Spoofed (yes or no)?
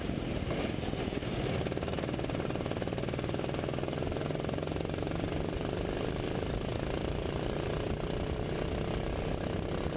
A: no